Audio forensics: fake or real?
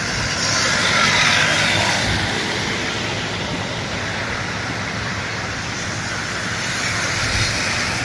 real